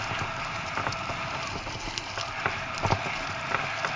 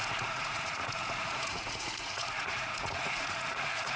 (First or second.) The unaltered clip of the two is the first